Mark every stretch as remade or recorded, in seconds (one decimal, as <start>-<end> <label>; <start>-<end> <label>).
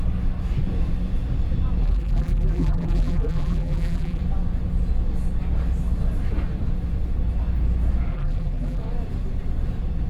0.0-1.8 recorded; 1.8-4.2 remade; 4.2-8.1 recorded; 8.1-8.8 remade; 8.8-10.1 recorded